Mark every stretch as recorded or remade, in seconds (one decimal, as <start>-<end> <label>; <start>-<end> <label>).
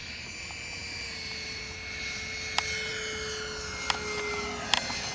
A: 0.0-0.8 recorded; 0.8-2.0 remade; 2.0-5.1 recorded